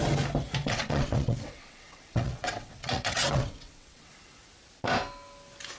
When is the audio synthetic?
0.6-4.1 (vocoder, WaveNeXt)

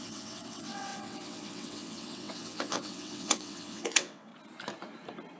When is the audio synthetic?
0.0-4.3 (vocoder, WaveNeXt)

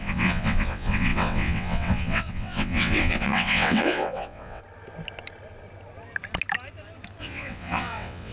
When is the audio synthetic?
0.0-4.6 (vocoder, WaveNeXt); 7.2-8.3

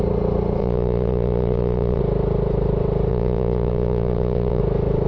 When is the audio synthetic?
0.6-2.0 (vocoder, WaveNeXt); 3.1-4.6

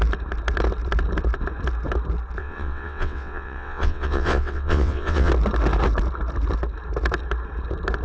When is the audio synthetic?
2.4-5.3 (vocoder, WaveNeXt)

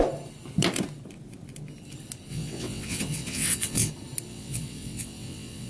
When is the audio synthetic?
2.3-3.9 (vocoder, WaveNeXt); 4.3-5.7

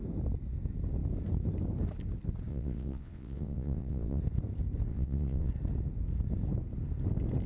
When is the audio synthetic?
2.5-4.2 (vocoder, WaveNeXt); 4.9-5.5